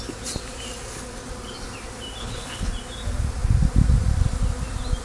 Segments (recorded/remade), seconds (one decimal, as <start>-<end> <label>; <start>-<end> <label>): 0.0-2.2 recorded; 2.2-2.7 remade; 2.7-5.0 recorded